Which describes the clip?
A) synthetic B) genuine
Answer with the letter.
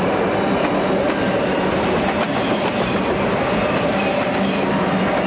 B